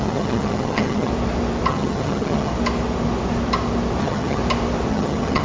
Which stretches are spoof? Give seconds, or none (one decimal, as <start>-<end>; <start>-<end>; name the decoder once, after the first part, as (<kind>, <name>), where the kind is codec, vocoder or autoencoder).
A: 0.0-1.1 (vocoder, HiFi-GAN); 1.7-2.5; 4.0-4.4; 4.9-5.4